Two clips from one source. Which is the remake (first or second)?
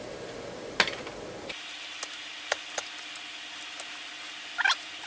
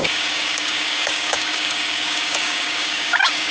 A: second